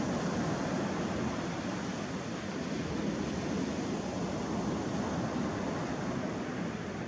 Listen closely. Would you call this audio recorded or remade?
recorded